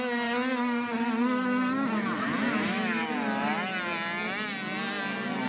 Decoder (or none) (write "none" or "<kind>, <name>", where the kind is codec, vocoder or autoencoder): none